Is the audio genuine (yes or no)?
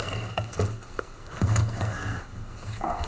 no